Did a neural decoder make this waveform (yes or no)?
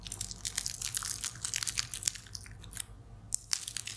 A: no